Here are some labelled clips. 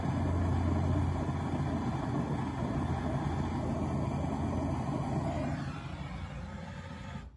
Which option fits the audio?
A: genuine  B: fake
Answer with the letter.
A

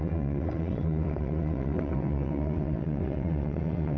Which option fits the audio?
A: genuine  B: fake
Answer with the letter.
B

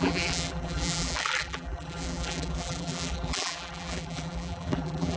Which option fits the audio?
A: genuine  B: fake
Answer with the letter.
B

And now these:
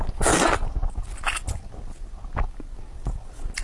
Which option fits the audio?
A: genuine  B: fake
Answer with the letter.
A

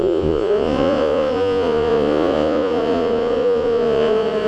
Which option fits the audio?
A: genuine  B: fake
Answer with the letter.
B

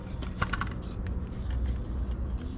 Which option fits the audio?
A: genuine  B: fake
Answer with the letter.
A